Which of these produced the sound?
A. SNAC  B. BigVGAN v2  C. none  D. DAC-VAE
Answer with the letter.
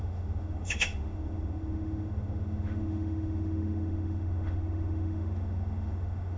D